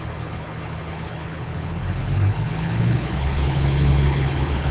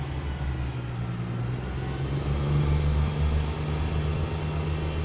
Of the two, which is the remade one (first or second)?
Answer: first